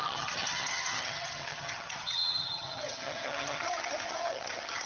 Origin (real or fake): fake